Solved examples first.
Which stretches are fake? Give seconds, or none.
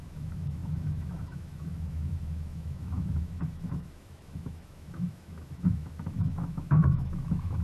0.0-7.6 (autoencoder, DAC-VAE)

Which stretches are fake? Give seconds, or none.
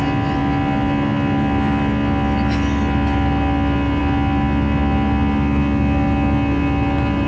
none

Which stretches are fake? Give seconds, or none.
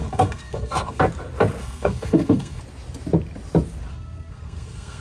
0.0-1.0 (codec, SNAC); 1.6-2.6; 3.9-5.0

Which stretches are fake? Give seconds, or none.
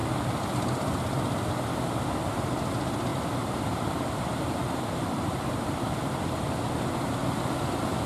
3.1-6.7 (vocoder, BigVGAN v2)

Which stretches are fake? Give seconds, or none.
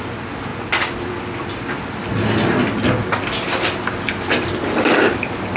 none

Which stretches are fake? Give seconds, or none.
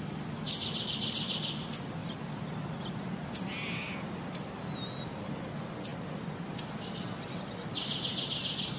2.0-3.2 (vocoder, BigVGAN v2)